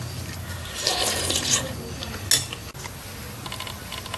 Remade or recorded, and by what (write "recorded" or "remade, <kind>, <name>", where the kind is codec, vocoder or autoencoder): recorded